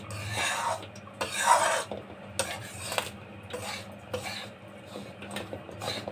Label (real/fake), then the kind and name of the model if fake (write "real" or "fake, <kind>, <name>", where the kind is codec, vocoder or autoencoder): real